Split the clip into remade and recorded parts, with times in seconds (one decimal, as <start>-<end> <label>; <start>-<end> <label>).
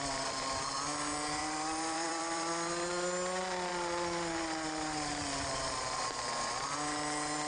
0.0-1.4 recorded; 1.4-2.9 remade; 2.9-7.5 recorded